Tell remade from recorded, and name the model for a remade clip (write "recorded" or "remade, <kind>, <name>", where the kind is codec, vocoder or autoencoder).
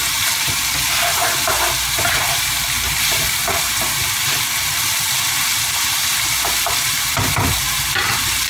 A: remade, vocoder, BigVGAN v2